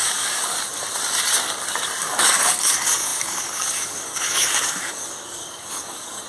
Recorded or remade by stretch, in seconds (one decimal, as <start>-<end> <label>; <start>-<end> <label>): 0.0-0.7 remade; 0.7-2.0 recorded; 2.0-6.3 remade